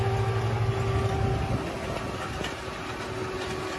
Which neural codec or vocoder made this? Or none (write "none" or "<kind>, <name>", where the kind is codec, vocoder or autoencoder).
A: none